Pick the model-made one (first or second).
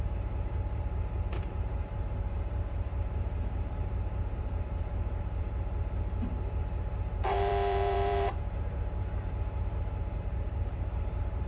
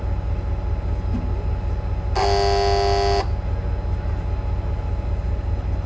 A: first